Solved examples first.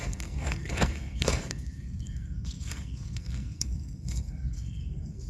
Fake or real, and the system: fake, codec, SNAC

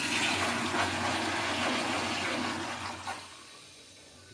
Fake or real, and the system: fake, vocoder, Vocos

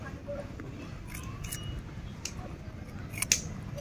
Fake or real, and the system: real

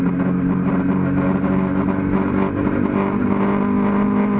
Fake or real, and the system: real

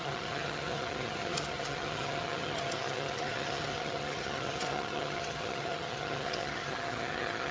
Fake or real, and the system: fake, vocoder, HiFi-GAN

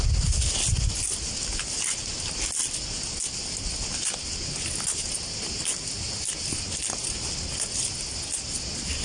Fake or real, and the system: real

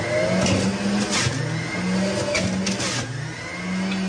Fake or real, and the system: real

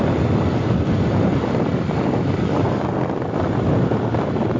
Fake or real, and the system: real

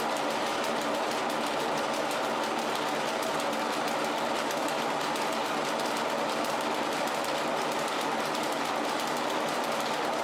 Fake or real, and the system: real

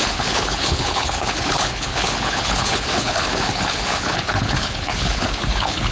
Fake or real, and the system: fake, codec, HILCodec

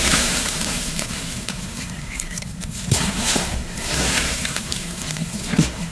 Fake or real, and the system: fake, codec, SNAC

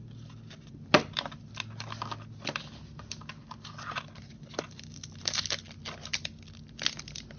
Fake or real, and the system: real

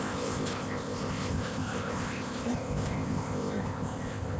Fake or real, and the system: fake, codec, ZipCodec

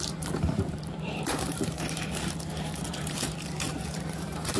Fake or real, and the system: fake, vocoder, BigVGAN v2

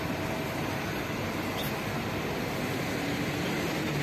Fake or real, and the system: real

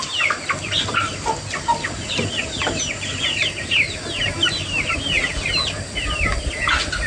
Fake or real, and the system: real